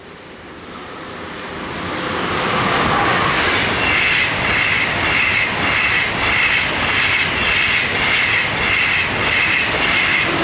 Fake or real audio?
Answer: real